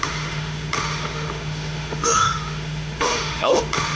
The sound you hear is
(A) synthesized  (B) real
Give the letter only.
A